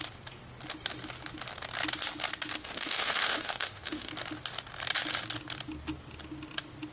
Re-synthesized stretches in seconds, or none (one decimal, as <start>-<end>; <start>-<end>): 2.6-4.1